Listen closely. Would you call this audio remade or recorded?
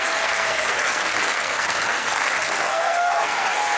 remade